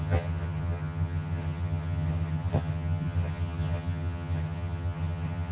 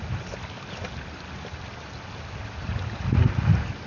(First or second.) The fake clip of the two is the first